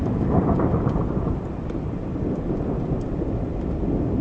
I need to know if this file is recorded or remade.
recorded